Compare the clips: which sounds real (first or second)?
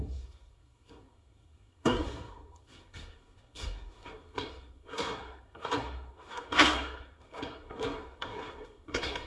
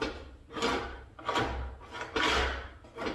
second